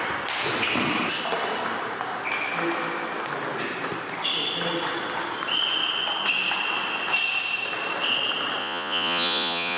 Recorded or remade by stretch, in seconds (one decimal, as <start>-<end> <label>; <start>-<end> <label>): 0.0-8.6 recorded; 8.6-9.8 remade